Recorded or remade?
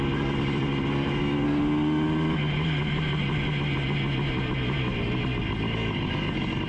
recorded